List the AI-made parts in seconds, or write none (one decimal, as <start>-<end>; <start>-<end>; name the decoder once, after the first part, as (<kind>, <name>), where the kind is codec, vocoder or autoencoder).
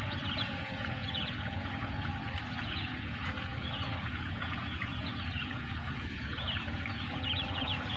0.0-2.1 (vocoder, Vocos); 2.6-8.0